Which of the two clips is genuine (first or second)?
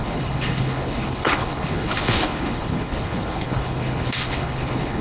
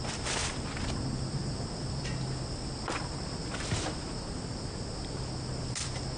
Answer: second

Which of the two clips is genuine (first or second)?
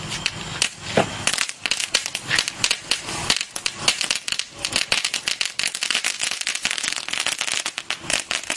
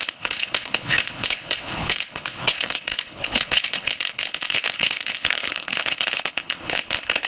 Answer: first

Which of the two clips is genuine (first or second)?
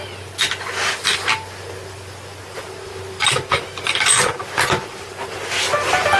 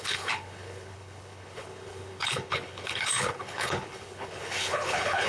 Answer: first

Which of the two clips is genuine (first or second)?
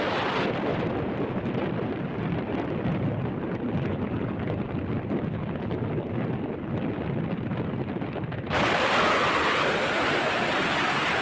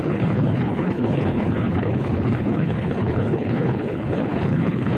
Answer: first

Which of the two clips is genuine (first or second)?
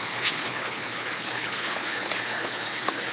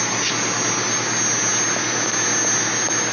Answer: second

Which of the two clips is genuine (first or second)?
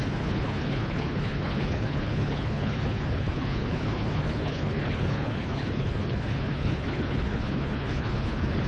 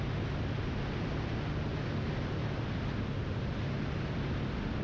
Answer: second